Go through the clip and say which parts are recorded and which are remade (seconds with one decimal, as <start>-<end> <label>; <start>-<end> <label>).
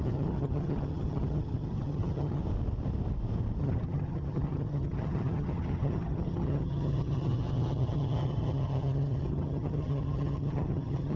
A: 0.0-2.4 remade; 2.4-3.6 recorded; 3.6-11.2 remade